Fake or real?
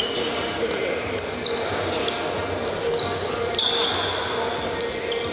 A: real